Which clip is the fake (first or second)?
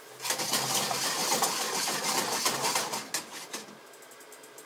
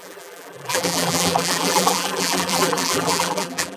second